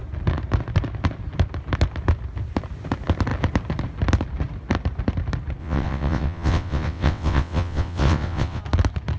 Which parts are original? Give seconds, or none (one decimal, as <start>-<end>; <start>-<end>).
0.0-5.6; 8.6-9.2